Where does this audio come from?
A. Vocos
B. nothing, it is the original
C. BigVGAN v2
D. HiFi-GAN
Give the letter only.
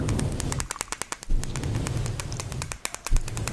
B